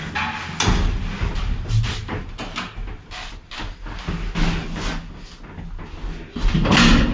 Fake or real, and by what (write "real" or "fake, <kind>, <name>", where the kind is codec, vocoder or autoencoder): real